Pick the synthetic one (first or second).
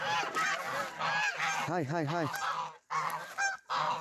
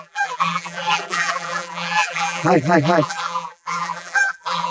second